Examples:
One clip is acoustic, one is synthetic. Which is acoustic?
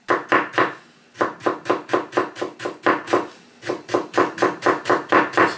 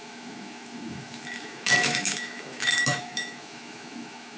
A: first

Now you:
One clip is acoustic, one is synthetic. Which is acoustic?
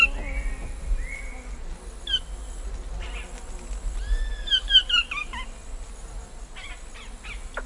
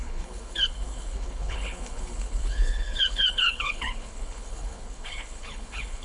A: first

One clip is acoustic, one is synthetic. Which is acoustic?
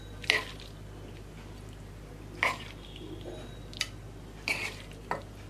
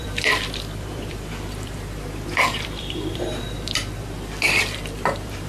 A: first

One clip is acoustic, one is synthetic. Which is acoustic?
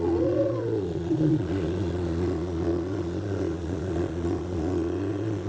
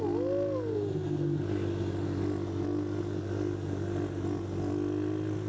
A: second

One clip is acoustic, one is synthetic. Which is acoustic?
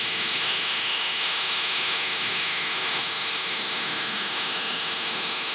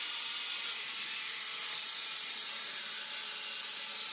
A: second